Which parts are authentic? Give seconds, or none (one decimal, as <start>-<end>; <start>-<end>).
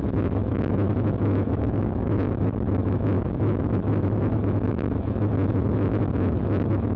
none